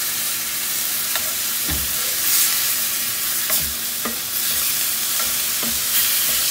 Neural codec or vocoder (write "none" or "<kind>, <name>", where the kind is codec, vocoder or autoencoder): none